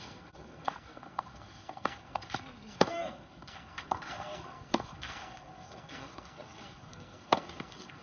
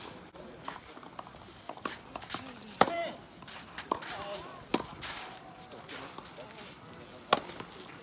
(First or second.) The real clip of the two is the second